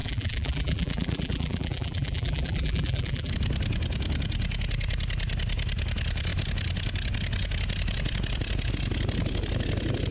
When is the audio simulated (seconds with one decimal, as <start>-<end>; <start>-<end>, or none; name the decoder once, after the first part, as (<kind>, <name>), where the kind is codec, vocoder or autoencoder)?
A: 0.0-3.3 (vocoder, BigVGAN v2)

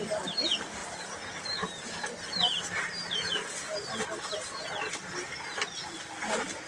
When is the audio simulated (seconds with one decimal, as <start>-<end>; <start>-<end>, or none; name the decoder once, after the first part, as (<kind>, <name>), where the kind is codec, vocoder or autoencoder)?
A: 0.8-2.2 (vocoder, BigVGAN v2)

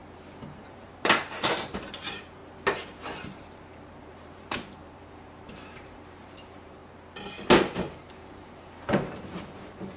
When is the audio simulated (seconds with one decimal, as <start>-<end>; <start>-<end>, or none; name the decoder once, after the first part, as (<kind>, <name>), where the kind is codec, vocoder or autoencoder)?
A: 0.6-2.4 (vocoder, BigVGAN v2); 3.2-6.8; 8.1-10.0